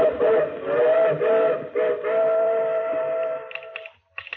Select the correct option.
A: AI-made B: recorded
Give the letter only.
B